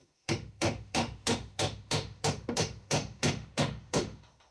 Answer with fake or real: fake